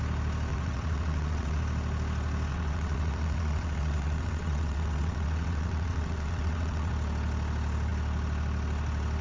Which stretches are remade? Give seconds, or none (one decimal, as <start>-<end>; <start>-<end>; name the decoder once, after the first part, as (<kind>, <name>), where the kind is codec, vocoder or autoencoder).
0.5-1.6 (vocoder, WaveNeXt); 2.5-6.9